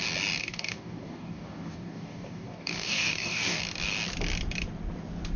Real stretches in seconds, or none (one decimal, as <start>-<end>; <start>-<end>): 0.0-0.4; 3.6-5.4